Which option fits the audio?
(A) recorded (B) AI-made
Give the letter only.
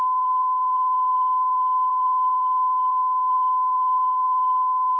B